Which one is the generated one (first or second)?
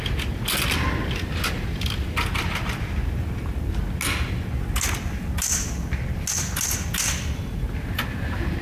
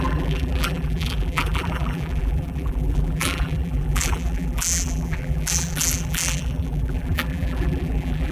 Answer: second